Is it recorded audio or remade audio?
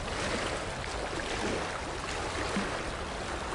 recorded